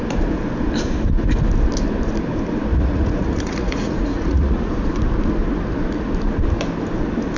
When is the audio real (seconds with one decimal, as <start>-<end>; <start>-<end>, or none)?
0.0-2.7; 4.7-7.4